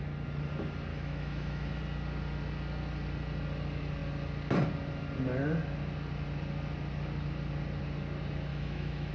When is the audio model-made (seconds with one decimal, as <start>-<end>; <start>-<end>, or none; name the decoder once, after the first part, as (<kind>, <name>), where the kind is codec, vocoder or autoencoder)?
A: 0.9-1.8 (autoencoder, DAC-VAE); 8.5-9.1